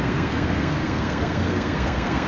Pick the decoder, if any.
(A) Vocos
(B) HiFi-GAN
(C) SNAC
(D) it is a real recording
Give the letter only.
C